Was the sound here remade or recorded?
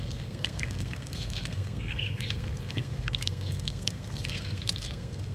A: remade